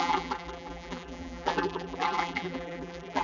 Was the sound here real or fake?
fake